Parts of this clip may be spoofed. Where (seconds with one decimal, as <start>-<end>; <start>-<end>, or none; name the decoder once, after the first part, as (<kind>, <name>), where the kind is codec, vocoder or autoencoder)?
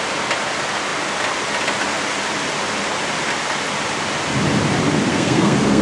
5.1-5.8 (codec, SNAC)